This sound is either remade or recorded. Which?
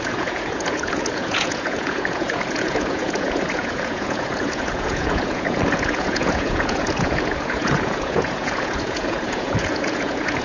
remade